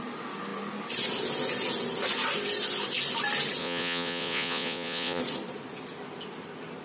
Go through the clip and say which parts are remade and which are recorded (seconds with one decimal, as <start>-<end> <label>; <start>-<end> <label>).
0.0-3.6 recorded; 3.6-5.2 remade; 5.2-6.8 recorded